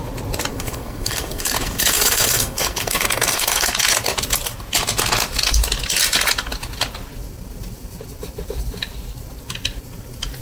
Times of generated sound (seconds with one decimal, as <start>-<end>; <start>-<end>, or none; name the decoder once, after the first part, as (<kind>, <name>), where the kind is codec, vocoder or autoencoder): 0.5-3.7 (codec, SNAC)